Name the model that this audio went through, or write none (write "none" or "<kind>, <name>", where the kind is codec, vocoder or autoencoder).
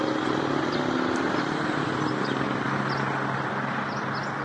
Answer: none